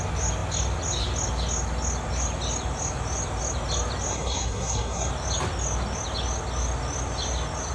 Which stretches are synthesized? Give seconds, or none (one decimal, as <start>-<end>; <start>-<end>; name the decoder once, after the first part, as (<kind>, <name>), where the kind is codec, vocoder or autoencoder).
4.1-5.1 (codec, SNAC)